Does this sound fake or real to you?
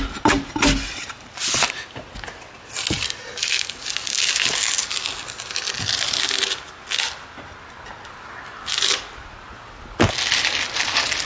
real